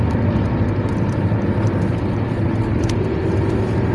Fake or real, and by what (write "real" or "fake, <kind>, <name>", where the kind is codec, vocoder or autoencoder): real